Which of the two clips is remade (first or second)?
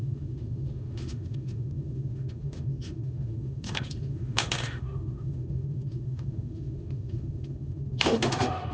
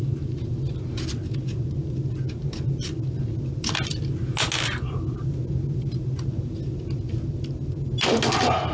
first